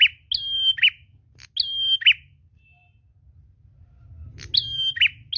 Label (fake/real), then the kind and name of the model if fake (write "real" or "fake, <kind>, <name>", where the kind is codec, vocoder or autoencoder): real